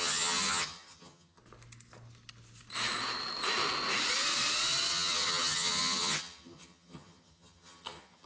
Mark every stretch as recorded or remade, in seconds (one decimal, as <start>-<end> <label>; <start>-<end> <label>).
0.0-1.4 remade; 1.4-4.9 recorded; 4.9-8.3 remade